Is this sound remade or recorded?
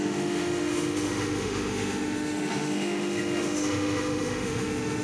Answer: remade